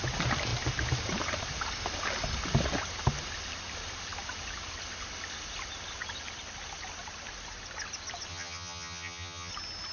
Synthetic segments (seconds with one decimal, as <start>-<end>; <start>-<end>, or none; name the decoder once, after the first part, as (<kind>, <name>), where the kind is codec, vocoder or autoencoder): 8.3-9.5 (vocoder, HiFi-GAN)